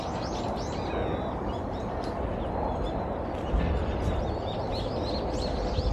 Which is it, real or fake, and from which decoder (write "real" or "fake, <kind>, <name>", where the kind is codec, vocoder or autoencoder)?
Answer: real